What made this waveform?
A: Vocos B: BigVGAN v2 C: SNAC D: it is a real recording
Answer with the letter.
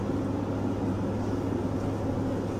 D